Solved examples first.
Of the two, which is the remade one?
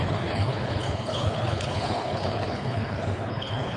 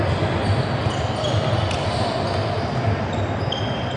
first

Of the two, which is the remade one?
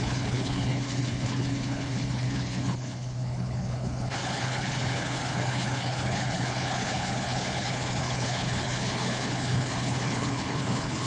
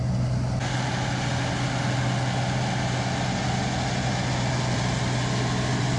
first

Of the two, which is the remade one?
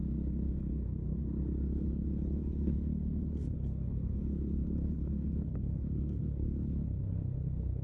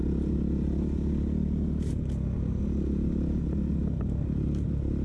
first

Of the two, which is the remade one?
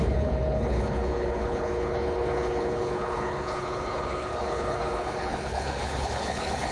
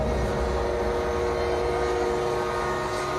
first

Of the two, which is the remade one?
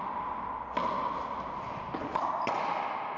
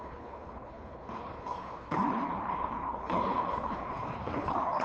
second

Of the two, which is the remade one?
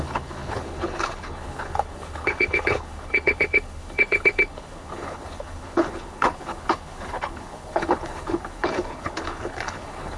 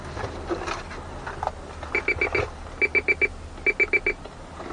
first